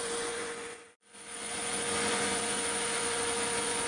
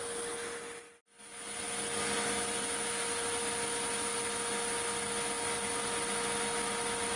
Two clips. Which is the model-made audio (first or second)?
first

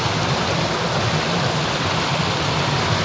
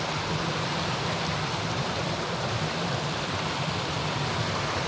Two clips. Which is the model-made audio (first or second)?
second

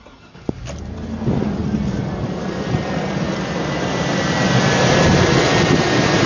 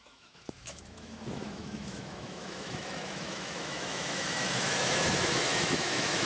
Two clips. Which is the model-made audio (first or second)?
second